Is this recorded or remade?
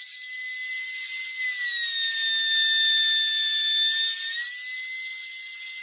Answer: recorded